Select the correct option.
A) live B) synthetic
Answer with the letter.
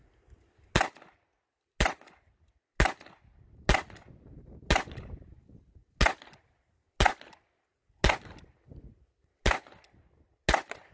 A